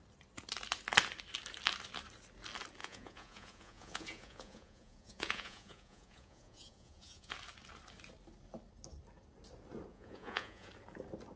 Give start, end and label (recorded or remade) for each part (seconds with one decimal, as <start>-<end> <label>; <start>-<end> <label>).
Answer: 0.0-2.8 recorded; 2.8-7.3 remade; 7.3-9.9 recorded; 9.9-10.7 remade; 10.7-11.4 recorded